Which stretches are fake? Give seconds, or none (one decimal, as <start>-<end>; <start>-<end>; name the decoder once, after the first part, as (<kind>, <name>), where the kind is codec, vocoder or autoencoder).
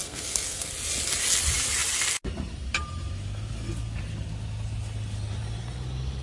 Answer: 0.0-0.7 (codec, SNAC)